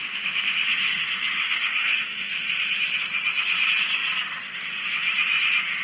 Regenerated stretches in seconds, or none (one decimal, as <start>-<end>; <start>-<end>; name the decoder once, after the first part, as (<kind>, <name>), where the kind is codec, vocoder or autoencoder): 0.0-2.6 (autoencoder, DAC-VAE)

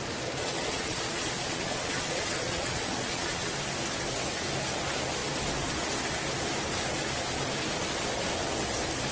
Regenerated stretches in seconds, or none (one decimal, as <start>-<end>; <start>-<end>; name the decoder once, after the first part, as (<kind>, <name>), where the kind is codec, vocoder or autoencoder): 0.4-3.5 (vocoder, Vocos)

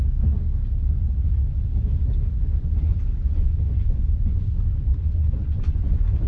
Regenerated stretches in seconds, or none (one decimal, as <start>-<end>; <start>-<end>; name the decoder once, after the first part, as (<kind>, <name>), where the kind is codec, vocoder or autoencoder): 2.4-4.5 (vocoder, Vocos); 5.0-6.3